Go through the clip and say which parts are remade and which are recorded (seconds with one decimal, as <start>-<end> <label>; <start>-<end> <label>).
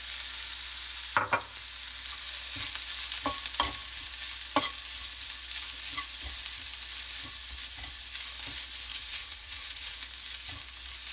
0.0-8.9 recorded; 8.9-10.0 remade; 10.0-11.1 recorded